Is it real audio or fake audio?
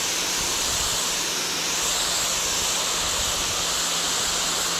real